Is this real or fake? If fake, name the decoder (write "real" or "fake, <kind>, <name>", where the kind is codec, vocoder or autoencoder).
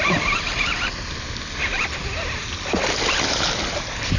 real